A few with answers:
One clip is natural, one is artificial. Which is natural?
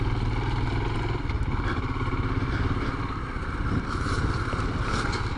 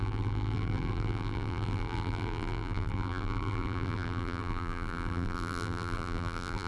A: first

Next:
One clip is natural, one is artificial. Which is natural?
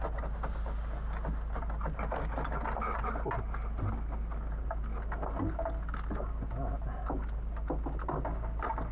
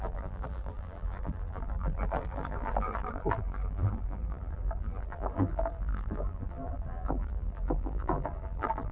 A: first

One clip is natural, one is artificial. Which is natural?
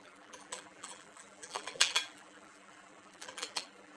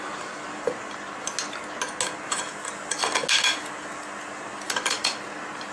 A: second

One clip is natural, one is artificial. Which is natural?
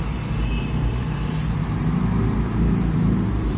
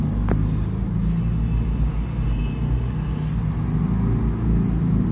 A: second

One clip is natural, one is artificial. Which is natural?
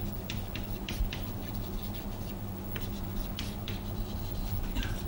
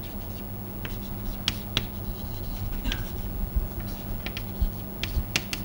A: second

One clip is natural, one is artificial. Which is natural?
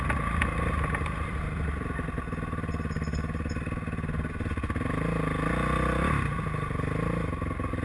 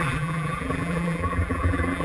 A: first